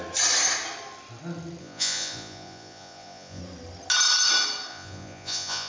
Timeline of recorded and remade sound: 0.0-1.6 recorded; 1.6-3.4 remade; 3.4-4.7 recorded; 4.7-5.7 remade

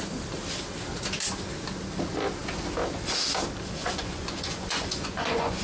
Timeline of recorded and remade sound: 0.0-3.8 recorded; 3.8-5.6 remade

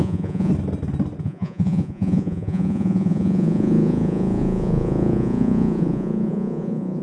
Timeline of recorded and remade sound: 0.0-0.5 remade; 0.5-1.2 recorded; 1.2-7.0 remade

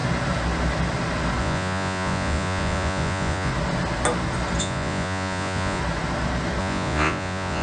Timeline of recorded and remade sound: 0.0-1.4 recorded; 1.4-3.5 remade; 3.5-4.6 recorded; 4.6-5.8 remade; 5.8-6.6 recorded; 6.6-7.6 remade

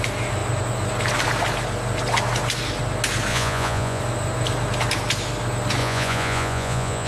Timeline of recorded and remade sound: 0.0-3.3 recorded; 3.3-4.0 remade; 4.0-5.8 recorded; 5.8-7.1 remade

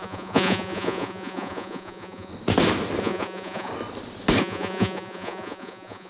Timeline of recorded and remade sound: 0.0-2.3 remade; 2.3-3.0 recorded; 3.0-3.7 remade; 3.7-4.4 recorded; 4.4-6.1 remade